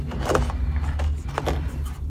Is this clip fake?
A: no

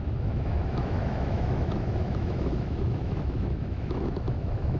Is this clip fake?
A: yes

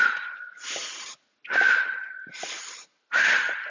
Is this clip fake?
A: no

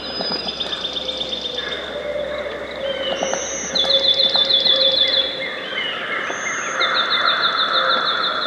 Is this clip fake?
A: no